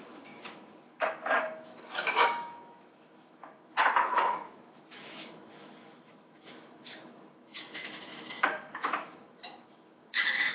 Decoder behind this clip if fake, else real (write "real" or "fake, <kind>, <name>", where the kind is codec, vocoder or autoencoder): fake, autoencoder, DAC-VAE